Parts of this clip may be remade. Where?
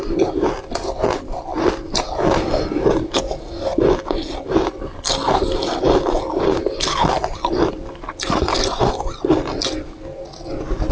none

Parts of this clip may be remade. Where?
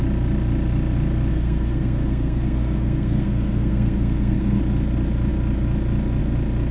1.3-4.6